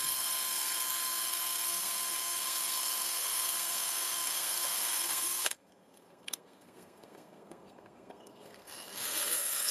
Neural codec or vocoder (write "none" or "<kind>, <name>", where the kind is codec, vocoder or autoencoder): codec, SNAC